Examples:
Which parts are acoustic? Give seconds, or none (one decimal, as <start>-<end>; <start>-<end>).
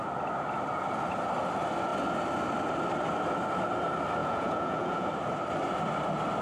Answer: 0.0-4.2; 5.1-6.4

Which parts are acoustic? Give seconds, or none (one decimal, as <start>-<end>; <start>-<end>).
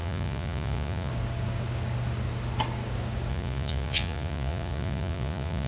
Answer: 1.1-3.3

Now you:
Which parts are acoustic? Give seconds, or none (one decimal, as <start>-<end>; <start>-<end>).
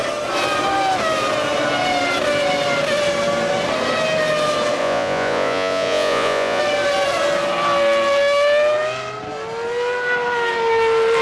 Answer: 0.0-4.8; 6.6-11.2